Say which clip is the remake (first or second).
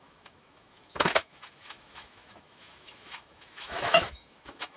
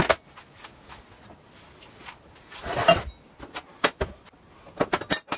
first